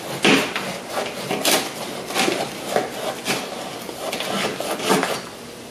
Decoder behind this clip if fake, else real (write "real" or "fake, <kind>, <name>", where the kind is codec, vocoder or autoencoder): real